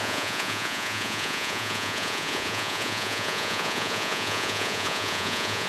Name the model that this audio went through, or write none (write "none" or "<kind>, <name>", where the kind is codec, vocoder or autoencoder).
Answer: vocoder, Vocos